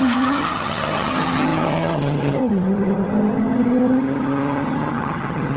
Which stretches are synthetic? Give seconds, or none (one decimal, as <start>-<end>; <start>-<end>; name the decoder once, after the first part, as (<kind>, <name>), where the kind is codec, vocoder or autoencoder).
0.0-5.6 (vocoder, HiFi-GAN)